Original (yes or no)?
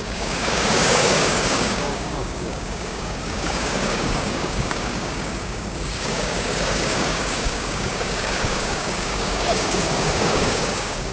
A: no